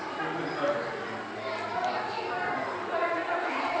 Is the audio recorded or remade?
recorded